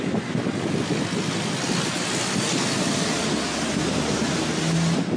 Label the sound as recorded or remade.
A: recorded